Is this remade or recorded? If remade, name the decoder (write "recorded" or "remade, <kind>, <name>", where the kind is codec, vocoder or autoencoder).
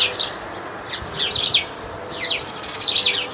recorded